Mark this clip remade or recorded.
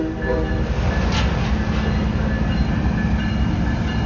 recorded